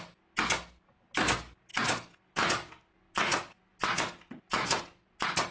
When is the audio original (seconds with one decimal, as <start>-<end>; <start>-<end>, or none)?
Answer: 0.0-5.5

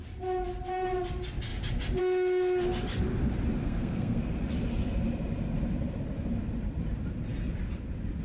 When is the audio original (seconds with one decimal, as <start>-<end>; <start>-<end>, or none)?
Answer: 0.0-3.6; 4.2-8.2

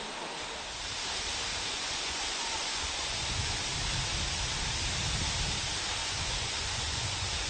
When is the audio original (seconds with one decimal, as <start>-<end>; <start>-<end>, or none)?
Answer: 0.0-1.5; 3.6-6.0

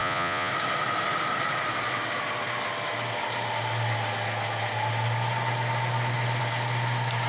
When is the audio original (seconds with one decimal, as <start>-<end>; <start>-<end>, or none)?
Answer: 0.5-7.3